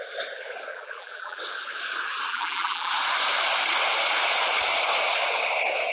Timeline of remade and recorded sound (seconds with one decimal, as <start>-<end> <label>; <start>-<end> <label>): 0.0-0.7 recorded; 0.7-1.4 remade; 1.4-2.3 recorded; 2.3-2.9 remade; 2.9-5.9 recorded